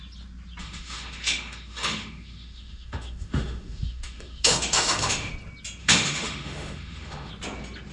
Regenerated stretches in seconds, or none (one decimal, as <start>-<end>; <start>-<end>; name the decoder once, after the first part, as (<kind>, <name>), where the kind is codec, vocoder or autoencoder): 0.6-5.3 (autoencoder, DAC-VAE); 5.8-7.3